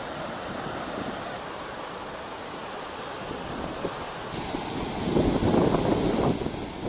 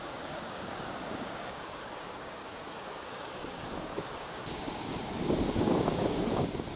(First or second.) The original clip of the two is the first